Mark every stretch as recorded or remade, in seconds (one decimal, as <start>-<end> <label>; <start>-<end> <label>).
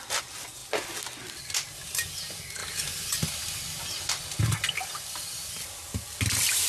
0.0-6.7 recorded